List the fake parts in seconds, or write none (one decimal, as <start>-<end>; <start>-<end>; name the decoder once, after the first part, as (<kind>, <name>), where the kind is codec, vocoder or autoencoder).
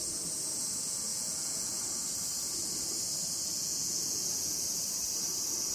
1.1-1.8 (vocoder, Vocos); 3.5-4.6